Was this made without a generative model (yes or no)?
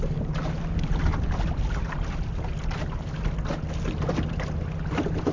yes